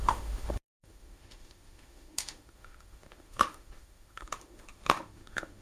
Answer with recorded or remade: remade